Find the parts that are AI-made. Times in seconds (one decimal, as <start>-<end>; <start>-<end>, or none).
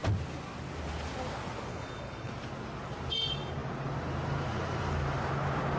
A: 1.7-2.3